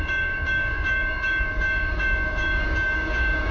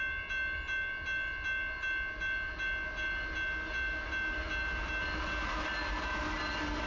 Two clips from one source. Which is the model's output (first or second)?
first